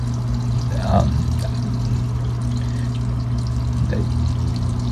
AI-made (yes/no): no